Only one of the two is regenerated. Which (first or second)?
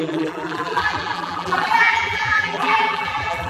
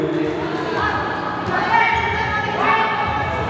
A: first